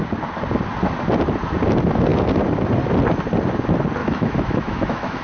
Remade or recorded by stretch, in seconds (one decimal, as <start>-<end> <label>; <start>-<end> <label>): 0.0-4.0 recorded; 4.0-5.2 remade